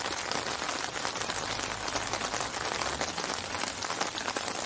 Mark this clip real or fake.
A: real